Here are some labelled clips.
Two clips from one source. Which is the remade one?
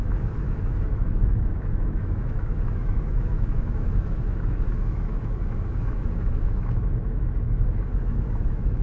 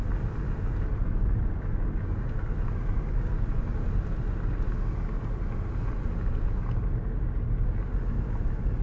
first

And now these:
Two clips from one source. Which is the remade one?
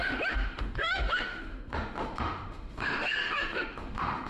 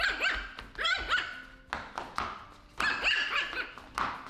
first